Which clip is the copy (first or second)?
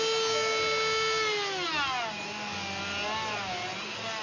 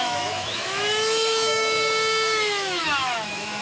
second